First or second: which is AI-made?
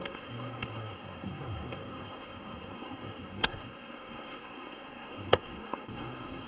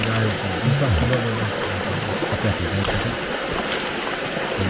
first